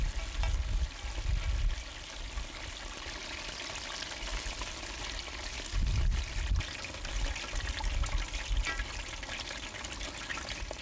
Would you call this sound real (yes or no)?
yes